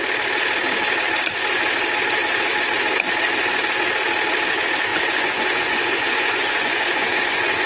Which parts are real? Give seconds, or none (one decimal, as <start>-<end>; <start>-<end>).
0.0-4.9